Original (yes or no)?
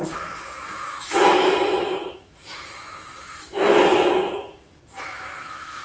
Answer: no